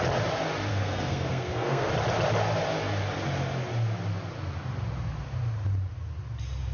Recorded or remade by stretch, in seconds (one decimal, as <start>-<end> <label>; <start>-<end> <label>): 0.0-0.7 recorded; 0.7-1.9 remade; 1.9-6.7 recorded